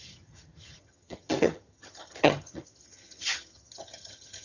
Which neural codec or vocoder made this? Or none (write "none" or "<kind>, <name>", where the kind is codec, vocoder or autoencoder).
vocoder, HiFi-GAN